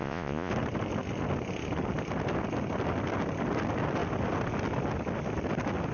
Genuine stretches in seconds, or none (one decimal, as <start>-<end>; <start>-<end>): 0.5-5.9